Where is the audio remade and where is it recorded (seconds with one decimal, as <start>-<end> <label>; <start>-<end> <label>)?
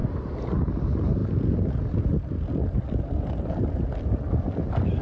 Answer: 0.0-5.0 recorded